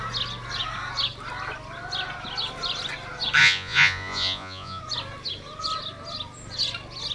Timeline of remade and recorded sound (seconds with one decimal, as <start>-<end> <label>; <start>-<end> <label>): 0.0-3.4 recorded; 3.4-4.8 remade; 4.8-7.1 recorded